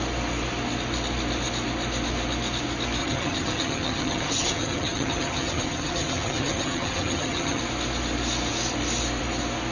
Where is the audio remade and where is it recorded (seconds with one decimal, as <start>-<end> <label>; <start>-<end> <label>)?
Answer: 0.0-3.0 recorded; 3.0-7.6 remade; 7.6-9.7 recorded